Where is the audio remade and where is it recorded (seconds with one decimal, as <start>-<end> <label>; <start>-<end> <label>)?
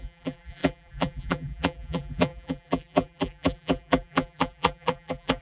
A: 0.0-5.4 remade